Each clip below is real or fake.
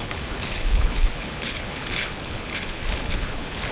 fake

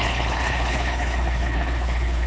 fake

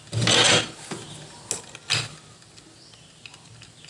real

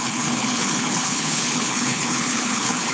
fake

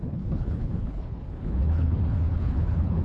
fake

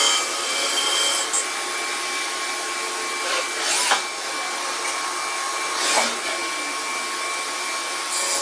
real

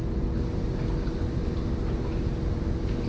real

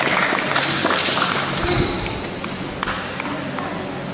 real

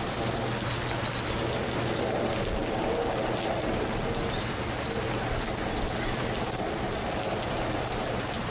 real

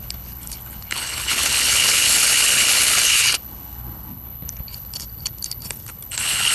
fake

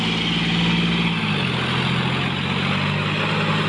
real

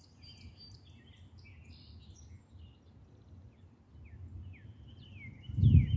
real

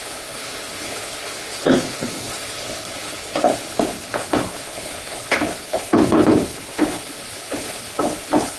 fake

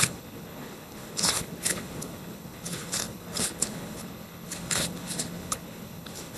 fake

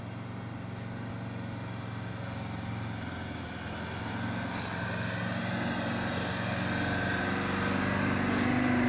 real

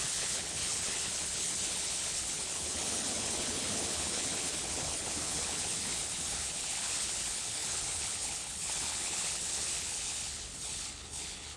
fake